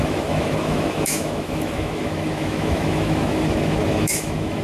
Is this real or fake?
fake